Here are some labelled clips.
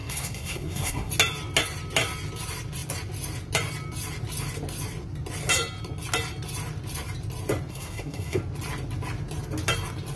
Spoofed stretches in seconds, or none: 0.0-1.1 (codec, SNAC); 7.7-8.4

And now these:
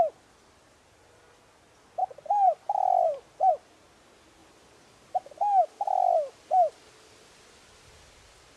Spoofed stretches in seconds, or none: 2.0-3.5 (vocoder, BigVGAN v2); 4.4-5.3

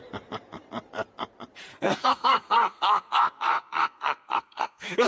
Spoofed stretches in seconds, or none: 1.7-5.1 (codec, SNAC)

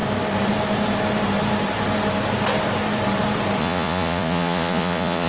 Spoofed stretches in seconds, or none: 3.6-5.3 (vocoder, Vocos)

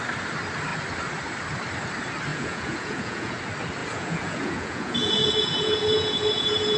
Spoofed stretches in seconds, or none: 2.3-3.4 (vocoder, Vocos); 3.8-6.8

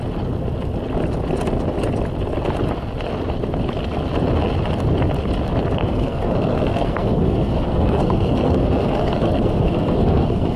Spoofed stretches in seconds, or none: 5.8-10.6 (codec, SNAC)